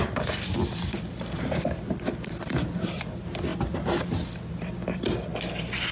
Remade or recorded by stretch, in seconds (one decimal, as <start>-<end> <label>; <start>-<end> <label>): 0.0-3.5 remade; 3.5-4.5 recorded; 4.5-5.3 remade; 5.3-5.9 recorded